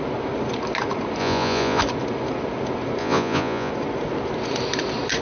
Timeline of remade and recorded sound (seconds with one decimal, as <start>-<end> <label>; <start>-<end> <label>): 0.0-1.2 recorded; 1.2-1.8 remade; 1.8-3.0 recorded; 3.0-3.7 remade; 3.7-5.2 recorded